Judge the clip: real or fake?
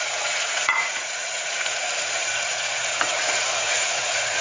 fake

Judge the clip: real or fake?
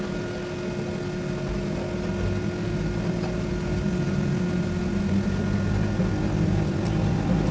real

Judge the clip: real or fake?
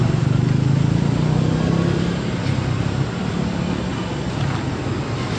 real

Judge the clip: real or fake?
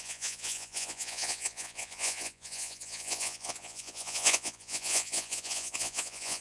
fake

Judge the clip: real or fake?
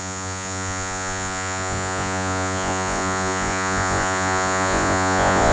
fake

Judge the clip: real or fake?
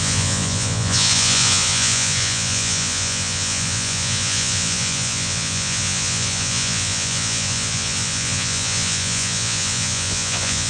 fake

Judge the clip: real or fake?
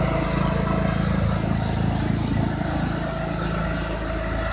real